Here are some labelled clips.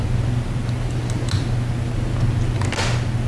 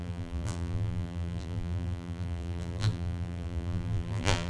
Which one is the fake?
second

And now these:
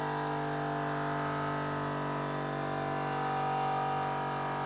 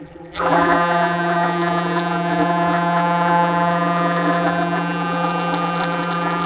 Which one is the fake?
second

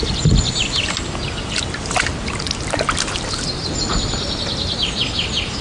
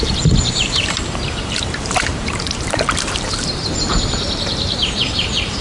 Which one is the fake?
second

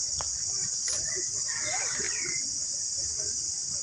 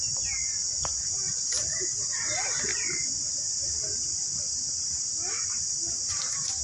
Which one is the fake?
first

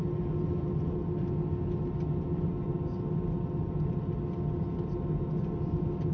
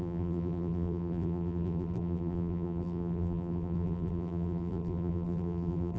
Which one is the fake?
second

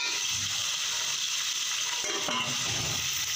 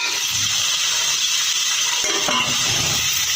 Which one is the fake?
second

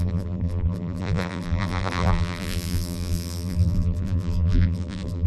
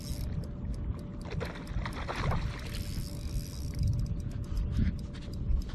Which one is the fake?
first